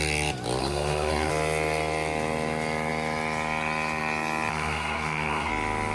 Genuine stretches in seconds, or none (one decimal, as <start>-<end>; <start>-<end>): 0.0-0.6; 1.3-4.5; 5.5-5.9

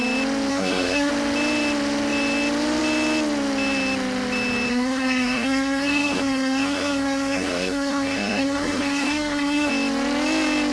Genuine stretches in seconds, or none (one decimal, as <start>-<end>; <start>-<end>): 0.0-0.5; 1.1-4.7; 9.7-10.7